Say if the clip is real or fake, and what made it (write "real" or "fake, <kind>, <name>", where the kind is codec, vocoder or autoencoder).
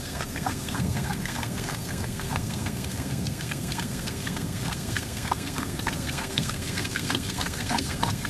fake, codec, SNAC